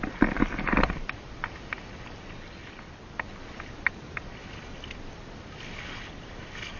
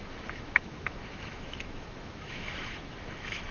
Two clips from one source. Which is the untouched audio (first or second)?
first